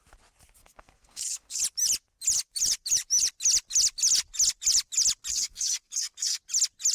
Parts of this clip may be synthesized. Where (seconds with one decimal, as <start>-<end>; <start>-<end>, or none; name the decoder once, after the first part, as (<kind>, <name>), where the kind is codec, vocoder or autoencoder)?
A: 0.6-1.6 (codec, SNAC); 5.3-6.4